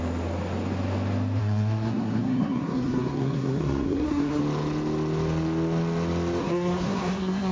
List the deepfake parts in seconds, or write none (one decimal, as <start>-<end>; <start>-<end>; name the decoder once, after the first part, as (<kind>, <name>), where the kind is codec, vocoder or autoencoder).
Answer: 1.4-4.4 (codec, SNAC); 6.4-7.5